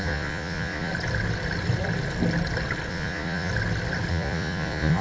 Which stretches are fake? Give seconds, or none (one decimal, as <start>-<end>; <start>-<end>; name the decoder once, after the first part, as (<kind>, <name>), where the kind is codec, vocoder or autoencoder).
0.0-0.9 (vocoder, Vocos); 2.9-3.5; 4.1-5.0